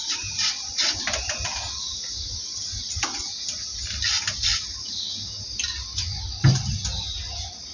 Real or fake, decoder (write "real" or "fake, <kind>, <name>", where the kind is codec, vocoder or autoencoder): real